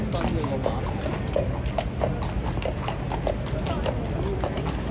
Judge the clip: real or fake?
real